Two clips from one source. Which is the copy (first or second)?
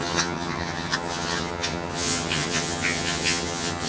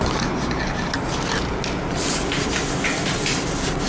first